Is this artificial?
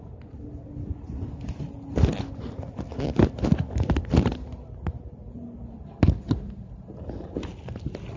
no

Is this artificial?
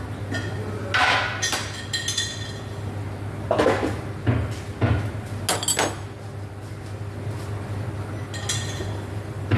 no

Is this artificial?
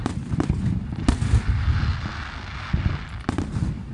no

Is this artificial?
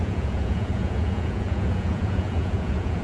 yes